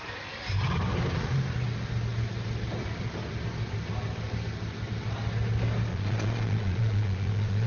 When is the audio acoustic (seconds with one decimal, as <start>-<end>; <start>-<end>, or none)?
0.0-5.9